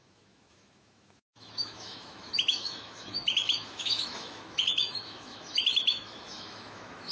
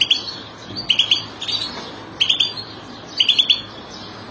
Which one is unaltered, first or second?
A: second